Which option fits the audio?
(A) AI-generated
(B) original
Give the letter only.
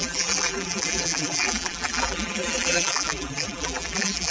A